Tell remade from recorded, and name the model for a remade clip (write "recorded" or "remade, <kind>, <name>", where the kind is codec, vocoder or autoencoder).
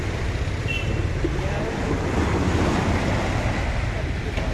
recorded